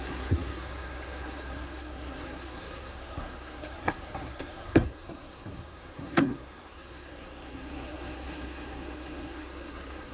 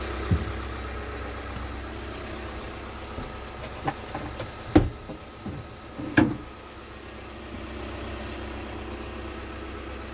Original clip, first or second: second